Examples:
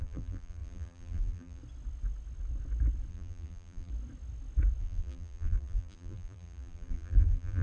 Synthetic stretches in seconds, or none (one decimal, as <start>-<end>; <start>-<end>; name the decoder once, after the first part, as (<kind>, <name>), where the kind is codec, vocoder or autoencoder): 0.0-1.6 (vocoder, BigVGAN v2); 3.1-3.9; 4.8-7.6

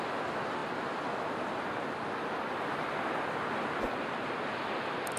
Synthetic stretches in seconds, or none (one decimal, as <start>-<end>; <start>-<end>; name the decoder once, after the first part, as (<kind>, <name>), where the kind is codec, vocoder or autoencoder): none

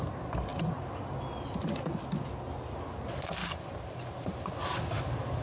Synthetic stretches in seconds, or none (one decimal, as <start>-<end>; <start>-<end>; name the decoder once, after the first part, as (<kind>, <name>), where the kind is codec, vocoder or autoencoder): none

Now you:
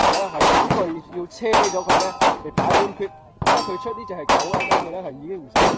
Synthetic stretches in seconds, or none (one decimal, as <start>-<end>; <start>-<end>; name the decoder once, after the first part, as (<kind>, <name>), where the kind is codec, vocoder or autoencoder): 0.0-1.0 (vocoder, BigVGAN v2); 3.9-5.1

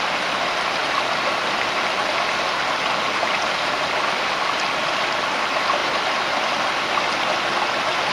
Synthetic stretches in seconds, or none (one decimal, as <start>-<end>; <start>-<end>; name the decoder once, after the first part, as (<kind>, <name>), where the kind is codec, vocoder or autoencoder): none